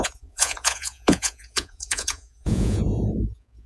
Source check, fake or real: fake